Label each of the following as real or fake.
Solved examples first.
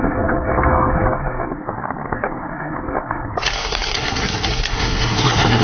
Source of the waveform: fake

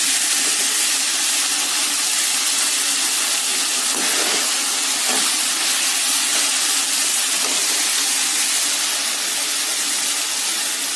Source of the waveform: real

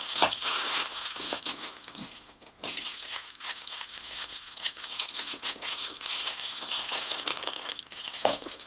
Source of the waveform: fake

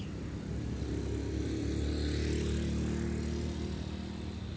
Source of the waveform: real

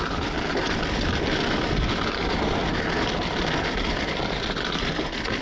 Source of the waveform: real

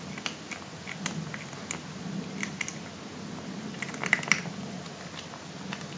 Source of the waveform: real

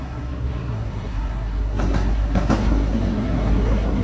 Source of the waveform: fake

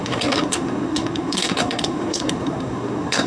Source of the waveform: fake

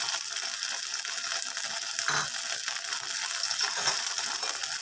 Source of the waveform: real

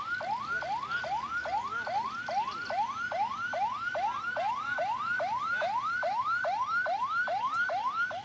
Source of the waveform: real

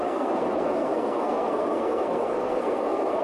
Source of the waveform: fake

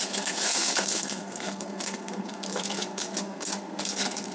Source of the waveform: fake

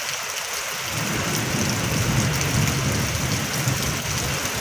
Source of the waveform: real